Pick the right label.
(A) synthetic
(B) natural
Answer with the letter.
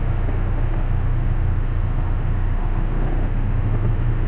A